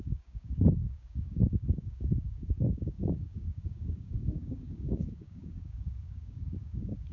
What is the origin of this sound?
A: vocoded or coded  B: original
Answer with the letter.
A